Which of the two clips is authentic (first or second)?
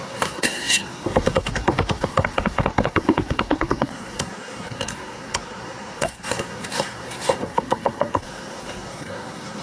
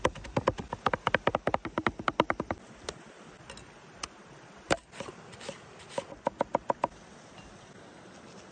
second